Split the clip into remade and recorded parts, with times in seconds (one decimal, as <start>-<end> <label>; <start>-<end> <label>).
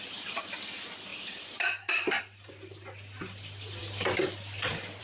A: 0.0-3.8 recorded; 3.8-5.0 remade